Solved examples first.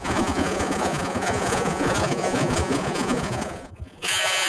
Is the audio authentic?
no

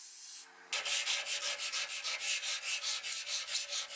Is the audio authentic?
yes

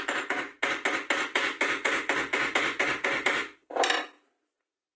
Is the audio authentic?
yes